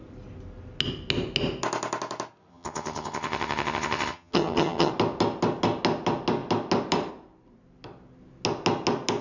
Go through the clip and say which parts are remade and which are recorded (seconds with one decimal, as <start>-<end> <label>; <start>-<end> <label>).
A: 0.0-2.5 recorded; 2.5-4.9 remade; 4.9-9.2 recorded

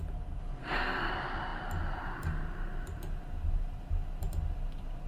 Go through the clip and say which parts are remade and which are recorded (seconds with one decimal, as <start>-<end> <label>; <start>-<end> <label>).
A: 0.0-0.6 recorded; 0.6-1.1 remade; 1.1-5.1 recorded